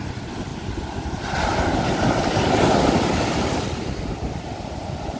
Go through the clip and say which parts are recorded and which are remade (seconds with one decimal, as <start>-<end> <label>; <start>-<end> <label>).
0.0-1.5 recorded; 1.5-4.5 remade; 4.5-5.2 recorded